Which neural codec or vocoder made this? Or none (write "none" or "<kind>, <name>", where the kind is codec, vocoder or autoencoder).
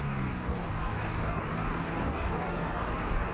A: codec, DAC